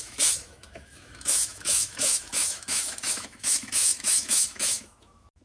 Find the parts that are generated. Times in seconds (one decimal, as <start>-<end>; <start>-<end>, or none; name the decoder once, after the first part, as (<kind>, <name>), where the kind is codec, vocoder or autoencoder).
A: 0.0-5.4 (autoencoder, DAC-VAE)